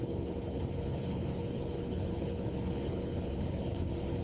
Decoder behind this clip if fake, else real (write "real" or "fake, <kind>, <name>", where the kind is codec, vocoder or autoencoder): fake, codec, HILCodec